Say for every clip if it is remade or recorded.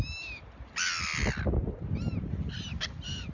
recorded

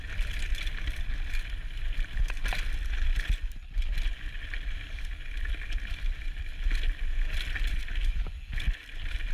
recorded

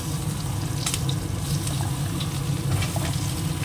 recorded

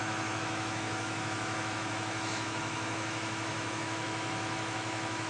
remade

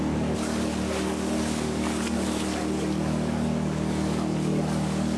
remade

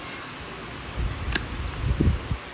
recorded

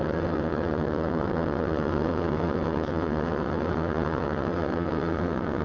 remade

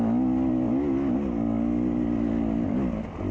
recorded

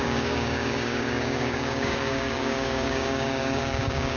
remade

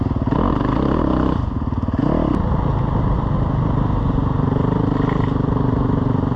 recorded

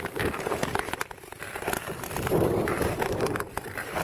recorded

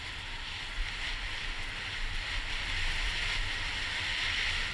recorded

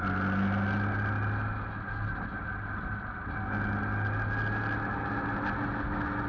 recorded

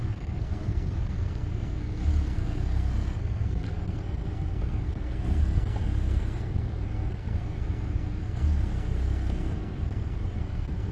remade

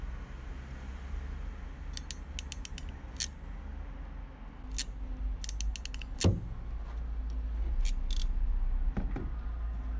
recorded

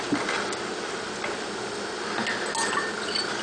recorded